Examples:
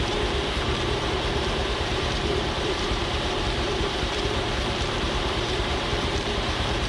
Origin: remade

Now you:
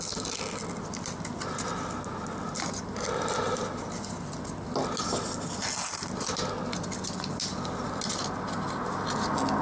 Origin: recorded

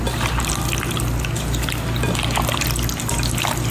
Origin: recorded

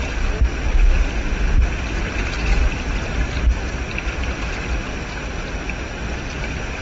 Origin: recorded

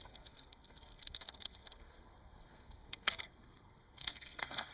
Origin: remade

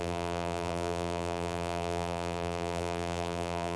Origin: remade